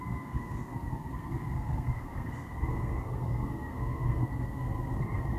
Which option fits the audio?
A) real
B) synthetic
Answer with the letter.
B